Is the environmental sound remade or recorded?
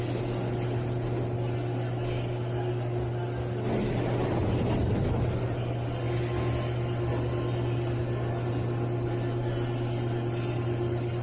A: recorded